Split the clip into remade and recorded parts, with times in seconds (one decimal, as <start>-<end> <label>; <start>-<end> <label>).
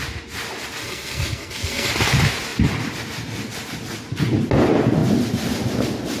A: 0.0-0.8 recorded; 0.8-1.9 remade; 1.9-6.2 recorded